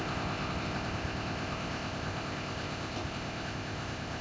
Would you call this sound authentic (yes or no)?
no